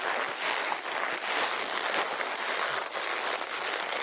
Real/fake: real